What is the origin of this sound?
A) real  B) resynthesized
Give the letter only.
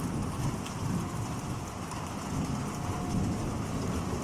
A